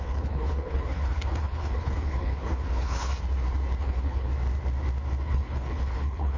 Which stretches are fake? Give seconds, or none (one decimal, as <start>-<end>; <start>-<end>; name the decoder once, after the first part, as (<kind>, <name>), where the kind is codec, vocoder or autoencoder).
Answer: 0.0-3.1 (codec, HILCodec); 3.8-4.3; 5.2-6.4